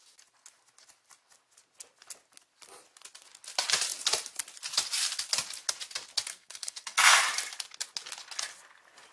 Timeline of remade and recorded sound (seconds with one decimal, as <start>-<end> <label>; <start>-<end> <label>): 0.0-6.3 recorded; 6.3-7.2 remade; 7.2-9.1 recorded